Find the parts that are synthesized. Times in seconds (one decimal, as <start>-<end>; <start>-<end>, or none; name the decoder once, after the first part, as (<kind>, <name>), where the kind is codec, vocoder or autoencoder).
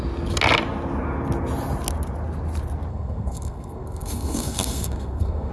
2.9-5.5 (codec, SNAC)